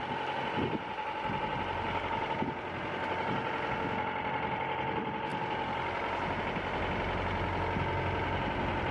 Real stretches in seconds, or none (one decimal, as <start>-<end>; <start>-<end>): 0.0-8.9